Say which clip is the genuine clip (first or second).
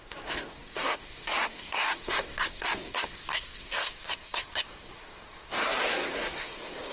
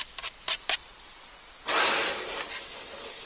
second